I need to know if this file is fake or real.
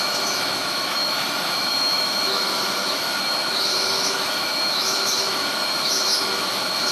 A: fake